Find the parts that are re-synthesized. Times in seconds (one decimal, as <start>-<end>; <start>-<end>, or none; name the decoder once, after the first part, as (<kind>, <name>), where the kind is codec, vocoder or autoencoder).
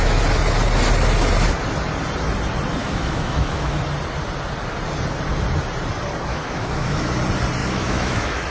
2.8-3.8 (autoencoder, DAC-VAE); 6.3-7.0; 7.6-8.5